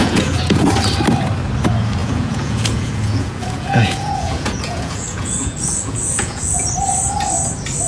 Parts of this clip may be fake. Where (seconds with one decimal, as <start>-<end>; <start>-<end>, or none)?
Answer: 0.0-0.7; 2.0-6.7